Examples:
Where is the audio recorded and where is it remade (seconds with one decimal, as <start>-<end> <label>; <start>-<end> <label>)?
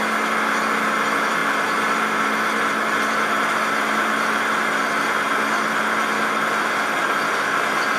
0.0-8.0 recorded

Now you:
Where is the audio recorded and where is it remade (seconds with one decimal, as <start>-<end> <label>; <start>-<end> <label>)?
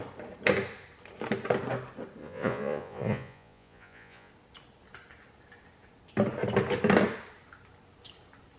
0.0-2.2 recorded; 2.2-4.3 remade; 4.3-8.6 recorded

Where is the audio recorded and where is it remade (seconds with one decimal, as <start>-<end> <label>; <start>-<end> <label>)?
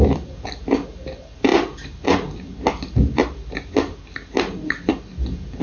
0.0-5.6 recorded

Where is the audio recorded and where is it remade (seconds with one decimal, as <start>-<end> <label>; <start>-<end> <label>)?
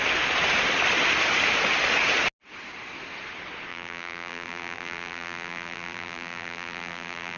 0.0-3.7 recorded; 3.7-7.4 remade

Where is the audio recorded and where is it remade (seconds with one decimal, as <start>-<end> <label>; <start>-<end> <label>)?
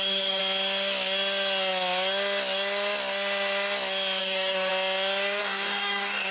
0.0-0.4 remade; 0.4-4.2 recorded; 4.2-4.7 remade; 4.7-5.4 recorded; 5.4-6.3 remade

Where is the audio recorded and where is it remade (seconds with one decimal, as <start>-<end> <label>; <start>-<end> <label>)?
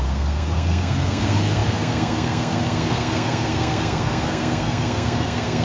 0.0-5.6 remade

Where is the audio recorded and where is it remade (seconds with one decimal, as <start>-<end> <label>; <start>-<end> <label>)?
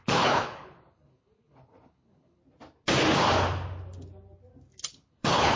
0.0-2.4 remade; 2.4-4.9 recorded; 4.9-5.6 remade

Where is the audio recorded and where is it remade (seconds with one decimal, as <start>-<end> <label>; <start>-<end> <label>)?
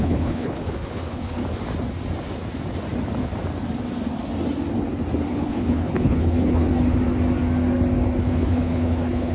0.0-1.4 remade; 1.4-5.3 recorded; 5.3-6.7 remade; 6.7-8.2 recorded; 8.2-9.3 remade